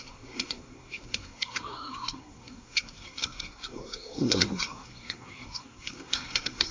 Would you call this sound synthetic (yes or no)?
yes